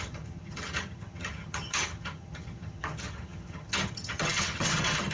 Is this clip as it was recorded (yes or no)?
no